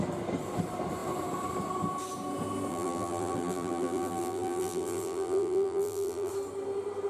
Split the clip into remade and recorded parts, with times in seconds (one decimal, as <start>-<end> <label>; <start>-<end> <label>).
0.0-2.7 recorded; 2.7-6.3 remade; 6.3-7.1 recorded